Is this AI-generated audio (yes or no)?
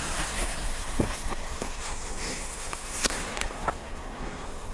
yes